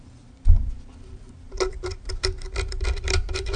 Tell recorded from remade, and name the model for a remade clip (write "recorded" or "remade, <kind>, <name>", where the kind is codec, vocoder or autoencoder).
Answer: remade, vocoder, BigVGAN v2